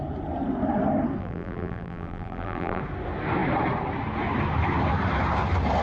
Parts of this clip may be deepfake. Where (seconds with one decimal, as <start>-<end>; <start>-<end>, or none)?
1.2-2.8